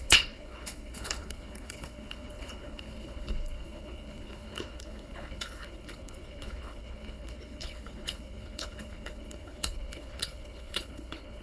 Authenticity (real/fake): fake